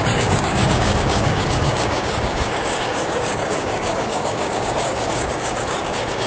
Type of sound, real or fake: fake